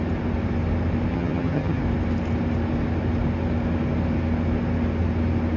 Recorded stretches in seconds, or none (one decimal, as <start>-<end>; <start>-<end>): 0.0-1.1; 1.8-5.6